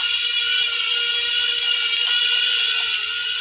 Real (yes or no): yes